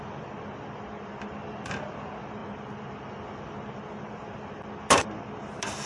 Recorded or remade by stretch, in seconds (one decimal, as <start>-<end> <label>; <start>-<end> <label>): 0.0-5.9 recorded